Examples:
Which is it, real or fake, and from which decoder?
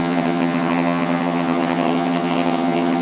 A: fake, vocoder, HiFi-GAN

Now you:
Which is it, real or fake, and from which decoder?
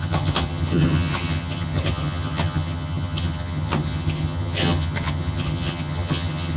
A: fake, vocoder, HiFi-GAN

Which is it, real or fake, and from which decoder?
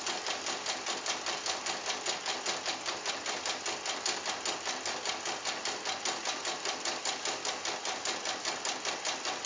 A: real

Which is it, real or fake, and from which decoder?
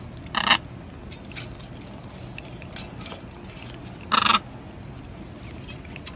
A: real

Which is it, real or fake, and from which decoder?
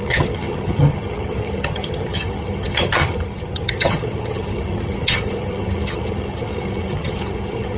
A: fake, vocoder, HiFi-GAN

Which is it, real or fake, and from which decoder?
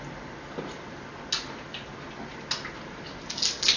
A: real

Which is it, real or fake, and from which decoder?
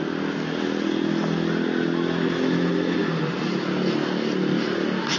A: real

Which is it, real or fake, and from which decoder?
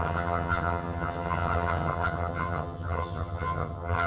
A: fake, vocoder, HiFi-GAN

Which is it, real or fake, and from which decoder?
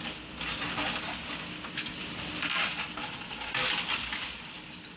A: real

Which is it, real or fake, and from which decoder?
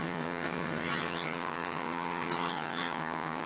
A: fake, vocoder, HiFi-GAN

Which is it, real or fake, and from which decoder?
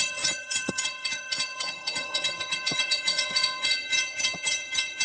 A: fake, vocoder, HiFi-GAN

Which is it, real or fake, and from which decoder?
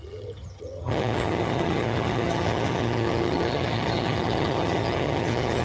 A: fake, vocoder, HiFi-GAN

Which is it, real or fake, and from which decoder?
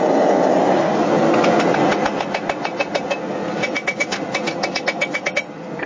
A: real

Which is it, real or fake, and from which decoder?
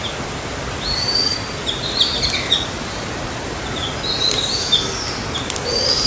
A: real